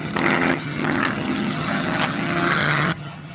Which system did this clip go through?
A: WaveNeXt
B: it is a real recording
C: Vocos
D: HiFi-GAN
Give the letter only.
D